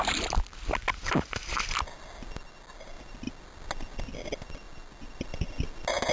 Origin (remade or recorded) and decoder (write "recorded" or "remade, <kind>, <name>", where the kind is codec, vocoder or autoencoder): recorded